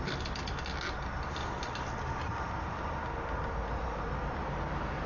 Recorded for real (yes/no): yes